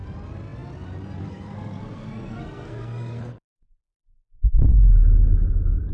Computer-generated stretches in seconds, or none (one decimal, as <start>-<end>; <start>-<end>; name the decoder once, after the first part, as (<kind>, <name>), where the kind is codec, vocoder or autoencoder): 1.2-4.7 (codec, SNAC)

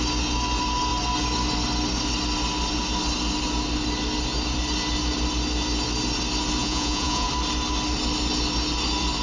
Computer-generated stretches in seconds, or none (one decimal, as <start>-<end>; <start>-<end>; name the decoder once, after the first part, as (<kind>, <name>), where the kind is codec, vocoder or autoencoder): 6.6-7.3 (vocoder, Vocos)

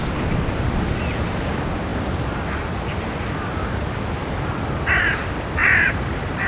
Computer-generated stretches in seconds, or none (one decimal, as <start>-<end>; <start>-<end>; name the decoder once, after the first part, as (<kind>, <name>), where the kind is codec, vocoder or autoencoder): 0.0-0.7 (vocoder, BigVGAN v2); 5.6-6.5

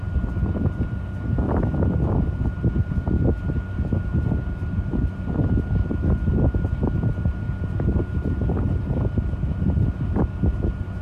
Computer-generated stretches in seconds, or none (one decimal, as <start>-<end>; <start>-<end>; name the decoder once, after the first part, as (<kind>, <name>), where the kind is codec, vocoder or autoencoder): none

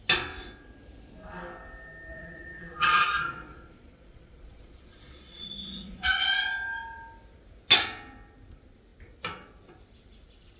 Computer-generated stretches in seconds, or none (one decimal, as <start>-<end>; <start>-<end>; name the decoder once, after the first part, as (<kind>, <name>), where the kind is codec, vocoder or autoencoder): 2.1-6.3 (vocoder, Vocos)

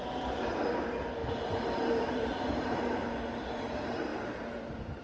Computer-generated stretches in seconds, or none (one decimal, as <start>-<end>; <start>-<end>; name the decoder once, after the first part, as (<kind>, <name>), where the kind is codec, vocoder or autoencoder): 1.2-2.8 (vocoder, BigVGAN v2)

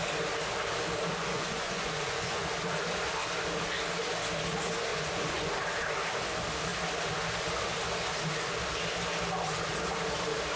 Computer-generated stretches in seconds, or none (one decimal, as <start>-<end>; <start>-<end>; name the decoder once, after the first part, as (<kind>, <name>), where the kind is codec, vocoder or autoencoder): 1.2-2.5 (vocoder, Vocos); 4.9-5.5

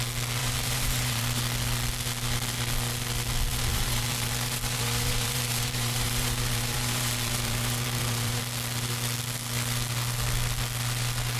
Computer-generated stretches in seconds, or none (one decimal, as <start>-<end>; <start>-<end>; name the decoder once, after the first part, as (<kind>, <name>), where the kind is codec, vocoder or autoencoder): 0.4-1.4 (vocoder, BigVGAN v2); 3.5-8.4